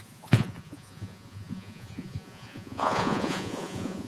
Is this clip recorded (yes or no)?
no